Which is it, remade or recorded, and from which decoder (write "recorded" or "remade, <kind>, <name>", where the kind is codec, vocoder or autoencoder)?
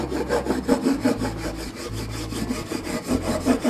recorded